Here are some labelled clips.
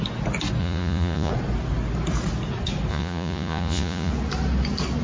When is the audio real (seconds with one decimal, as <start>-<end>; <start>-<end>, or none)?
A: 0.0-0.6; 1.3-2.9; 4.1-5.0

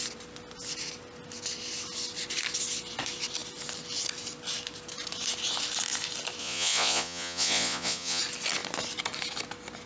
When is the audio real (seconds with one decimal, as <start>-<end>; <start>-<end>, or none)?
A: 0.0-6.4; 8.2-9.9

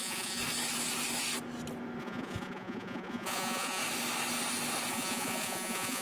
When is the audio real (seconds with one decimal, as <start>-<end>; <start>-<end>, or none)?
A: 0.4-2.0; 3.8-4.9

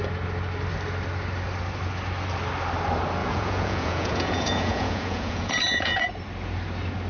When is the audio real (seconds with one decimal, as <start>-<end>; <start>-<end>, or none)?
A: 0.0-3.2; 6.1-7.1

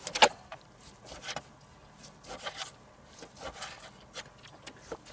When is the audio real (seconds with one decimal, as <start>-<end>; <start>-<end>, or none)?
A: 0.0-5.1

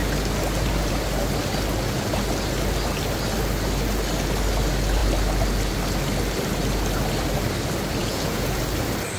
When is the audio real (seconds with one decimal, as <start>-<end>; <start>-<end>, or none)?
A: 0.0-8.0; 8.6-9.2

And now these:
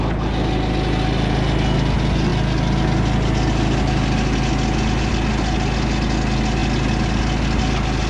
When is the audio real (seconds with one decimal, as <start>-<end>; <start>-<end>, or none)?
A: 0.0-8.1

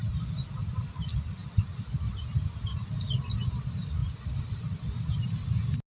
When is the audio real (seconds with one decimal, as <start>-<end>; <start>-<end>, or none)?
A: 0.0-5.9